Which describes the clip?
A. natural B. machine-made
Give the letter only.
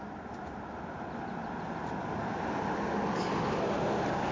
A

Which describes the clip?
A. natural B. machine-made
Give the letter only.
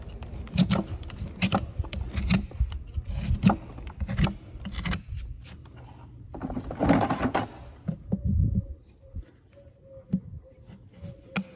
A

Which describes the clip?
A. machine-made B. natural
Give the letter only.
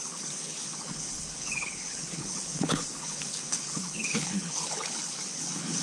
A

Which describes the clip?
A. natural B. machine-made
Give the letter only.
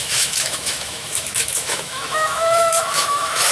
B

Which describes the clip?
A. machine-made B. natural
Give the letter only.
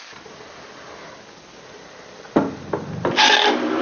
B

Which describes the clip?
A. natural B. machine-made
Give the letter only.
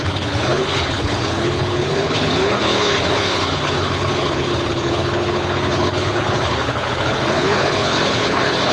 B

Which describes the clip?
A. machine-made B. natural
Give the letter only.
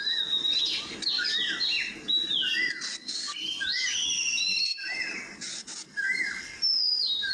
B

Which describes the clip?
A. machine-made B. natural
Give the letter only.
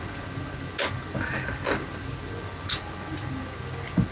B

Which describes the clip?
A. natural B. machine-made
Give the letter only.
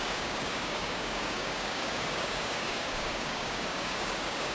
B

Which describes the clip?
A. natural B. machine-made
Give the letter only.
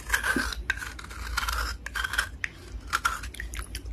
A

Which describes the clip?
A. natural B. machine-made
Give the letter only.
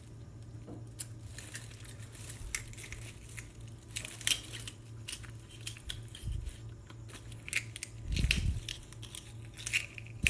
A